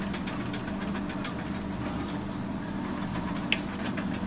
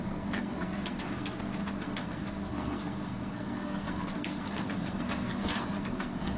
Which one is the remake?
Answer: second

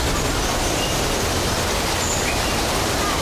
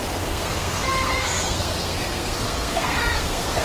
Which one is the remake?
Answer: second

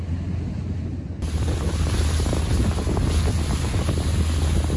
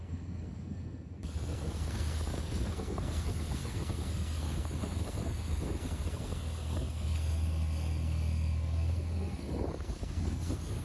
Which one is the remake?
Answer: second